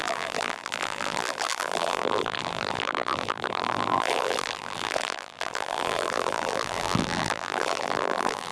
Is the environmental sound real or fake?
fake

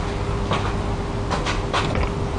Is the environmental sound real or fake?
real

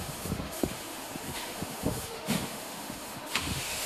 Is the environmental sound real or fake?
fake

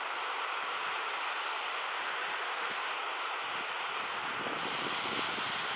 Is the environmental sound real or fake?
real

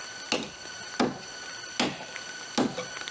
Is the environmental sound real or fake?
real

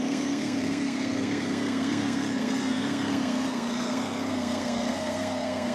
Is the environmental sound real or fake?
fake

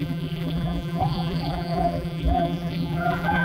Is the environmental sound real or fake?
fake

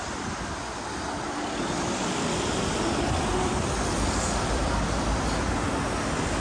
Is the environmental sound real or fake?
real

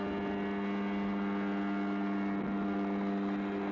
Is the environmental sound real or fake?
real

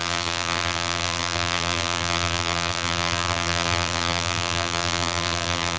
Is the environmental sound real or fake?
fake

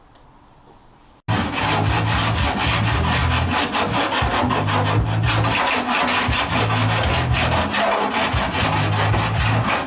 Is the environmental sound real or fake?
real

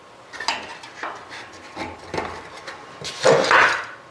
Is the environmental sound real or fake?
real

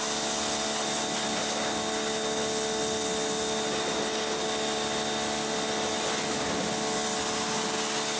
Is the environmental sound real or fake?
real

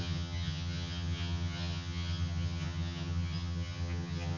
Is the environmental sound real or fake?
fake